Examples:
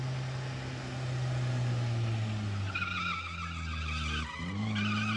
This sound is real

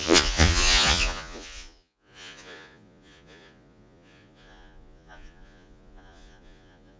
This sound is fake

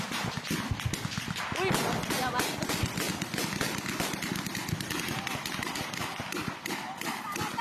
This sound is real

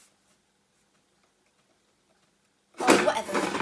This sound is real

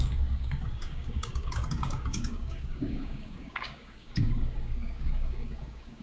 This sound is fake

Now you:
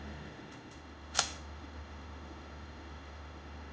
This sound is fake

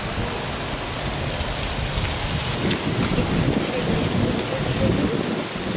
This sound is real